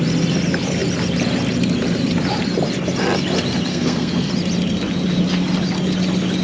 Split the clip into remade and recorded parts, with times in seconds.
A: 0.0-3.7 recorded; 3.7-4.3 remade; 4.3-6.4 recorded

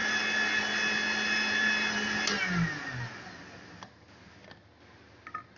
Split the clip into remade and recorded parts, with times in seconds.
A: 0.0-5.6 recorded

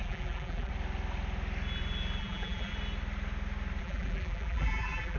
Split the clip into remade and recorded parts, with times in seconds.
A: 0.0-0.7 remade; 0.7-2.2 recorded; 2.2-2.7 remade; 2.7-3.8 recorded; 3.8-5.2 remade